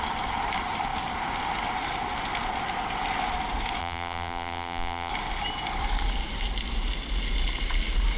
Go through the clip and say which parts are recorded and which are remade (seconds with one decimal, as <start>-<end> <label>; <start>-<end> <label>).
0.0-3.8 recorded; 3.8-5.1 remade; 5.1-8.2 recorded